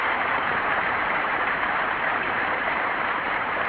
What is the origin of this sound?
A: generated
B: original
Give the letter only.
A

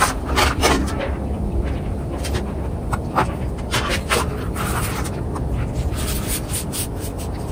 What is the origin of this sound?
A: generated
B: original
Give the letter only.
A